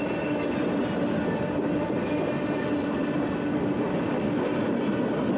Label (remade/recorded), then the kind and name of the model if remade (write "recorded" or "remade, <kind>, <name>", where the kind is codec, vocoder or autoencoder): recorded